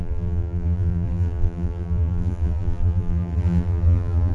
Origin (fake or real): fake